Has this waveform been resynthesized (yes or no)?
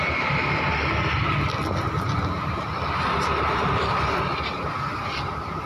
no